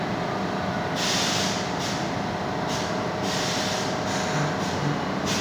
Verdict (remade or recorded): recorded